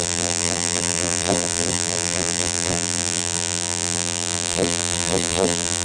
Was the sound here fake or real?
fake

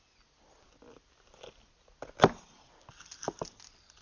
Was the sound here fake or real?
real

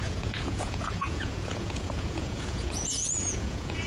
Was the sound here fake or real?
fake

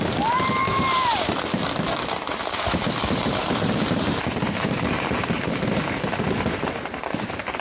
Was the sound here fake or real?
fake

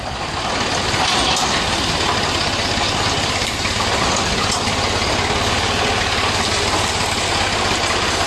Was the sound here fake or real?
real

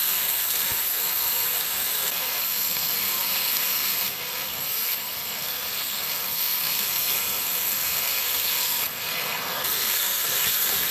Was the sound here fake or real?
fake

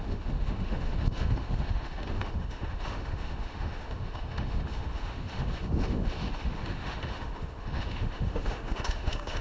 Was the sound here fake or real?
fake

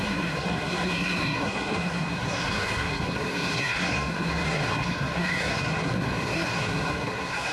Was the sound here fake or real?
fake